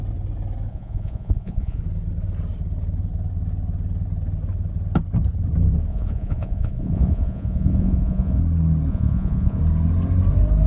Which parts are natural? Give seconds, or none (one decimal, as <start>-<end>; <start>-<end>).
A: 0.0-0.7; 1.8-5.9; 8.4-8.9; 9.6-10.7